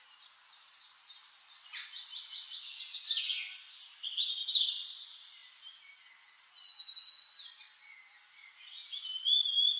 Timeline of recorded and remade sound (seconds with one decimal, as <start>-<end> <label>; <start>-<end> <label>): 0.0-9.8 recorded